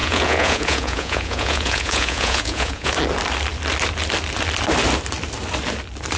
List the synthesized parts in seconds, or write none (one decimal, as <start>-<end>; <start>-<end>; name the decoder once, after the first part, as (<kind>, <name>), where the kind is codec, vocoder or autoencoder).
0.0-2.9 (vocoder, Vocos)